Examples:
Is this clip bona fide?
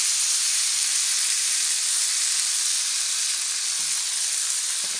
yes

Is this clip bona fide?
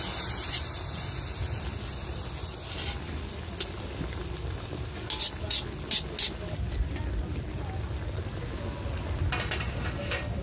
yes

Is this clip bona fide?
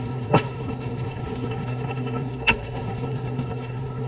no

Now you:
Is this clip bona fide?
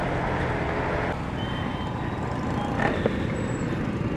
yes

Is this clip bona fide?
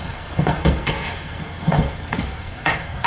no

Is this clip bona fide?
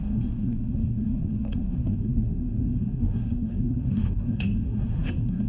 no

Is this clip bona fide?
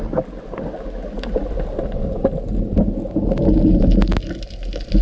yes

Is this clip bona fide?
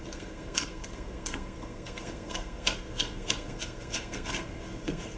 no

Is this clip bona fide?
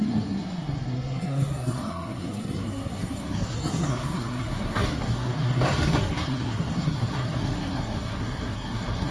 no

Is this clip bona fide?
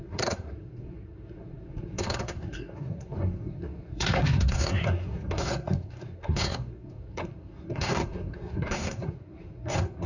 no